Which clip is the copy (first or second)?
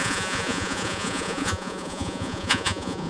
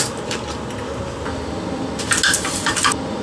first